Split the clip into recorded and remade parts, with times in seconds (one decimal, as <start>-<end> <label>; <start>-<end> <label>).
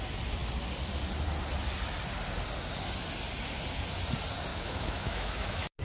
0.0-4.5 recorded; 4.5-5.8 remade